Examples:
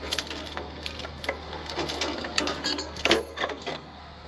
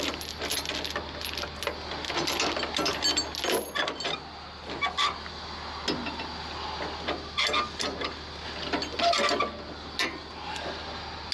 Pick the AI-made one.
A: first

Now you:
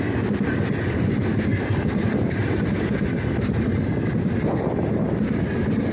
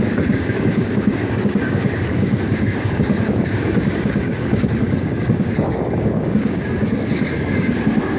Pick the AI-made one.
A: second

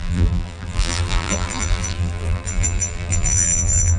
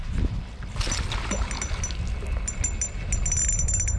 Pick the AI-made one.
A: first